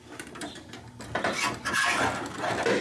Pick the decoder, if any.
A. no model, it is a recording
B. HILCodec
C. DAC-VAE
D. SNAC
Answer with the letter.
A